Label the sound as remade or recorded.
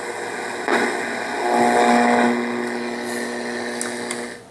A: recorded